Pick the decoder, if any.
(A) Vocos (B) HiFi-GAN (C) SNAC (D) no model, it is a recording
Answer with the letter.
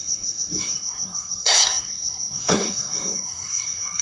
C